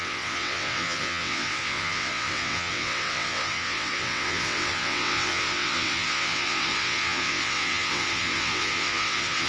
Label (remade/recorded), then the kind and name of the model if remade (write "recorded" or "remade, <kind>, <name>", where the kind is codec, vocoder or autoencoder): remade, vocoder, WaveNeXt